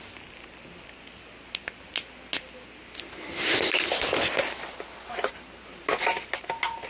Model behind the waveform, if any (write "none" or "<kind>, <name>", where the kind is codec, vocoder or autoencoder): none